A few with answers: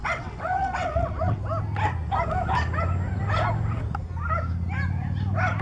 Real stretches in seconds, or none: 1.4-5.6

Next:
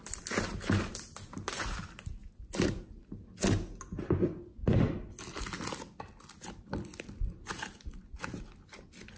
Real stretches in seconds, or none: 0.0-9.2

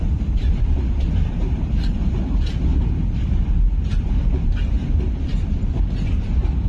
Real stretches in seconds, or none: none

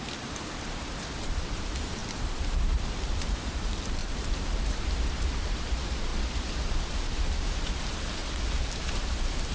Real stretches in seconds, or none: 6.1-6.9; 8.2-9.5

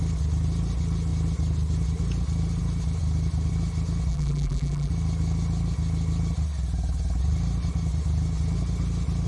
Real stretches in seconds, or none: 0.0-4.1; 4.9-9.3